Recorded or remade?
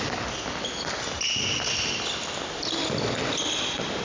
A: recorded